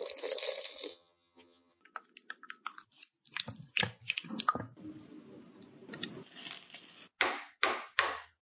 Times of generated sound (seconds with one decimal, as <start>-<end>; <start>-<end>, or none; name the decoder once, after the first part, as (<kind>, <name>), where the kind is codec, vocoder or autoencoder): 0.9-1.8 (vocoder, HiFi-GAN)